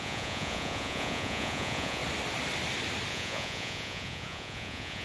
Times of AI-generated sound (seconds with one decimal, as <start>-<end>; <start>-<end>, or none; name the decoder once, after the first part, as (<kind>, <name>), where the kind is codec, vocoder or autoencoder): 0.0-2.0 (vocoder, Vocos); 3.1-5.0